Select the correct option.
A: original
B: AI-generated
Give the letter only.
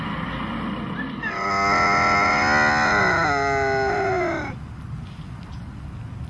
A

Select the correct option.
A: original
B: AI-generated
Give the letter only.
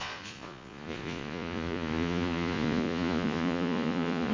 B